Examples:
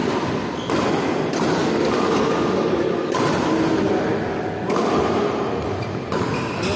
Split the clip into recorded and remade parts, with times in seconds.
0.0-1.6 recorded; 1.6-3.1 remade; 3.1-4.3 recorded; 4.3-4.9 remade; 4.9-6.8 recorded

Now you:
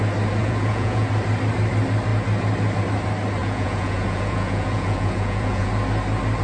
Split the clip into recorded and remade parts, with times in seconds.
0.0-0.4 recorded; 0.4-1.1 remade; 1.1-3.4 recorded; 3.4-5.7 remade; 5.7-6.4 recorded

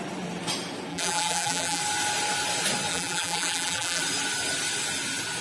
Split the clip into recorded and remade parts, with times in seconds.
0.0-0.9 recorded; 0.9-1.8 remade; 1.8-2.9 recorded; 2.9-4.0 remade; 4.0-5.4 recorded

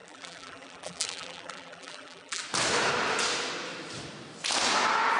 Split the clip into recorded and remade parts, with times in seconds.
0.0-2.4 remade; 2.4-5.2 recorded